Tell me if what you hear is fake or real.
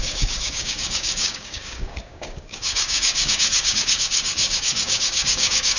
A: fake